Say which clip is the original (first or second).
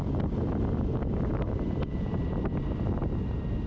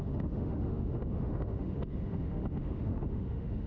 first